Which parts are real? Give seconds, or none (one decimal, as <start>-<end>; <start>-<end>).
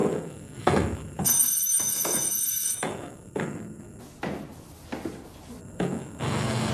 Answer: 4.0-5.6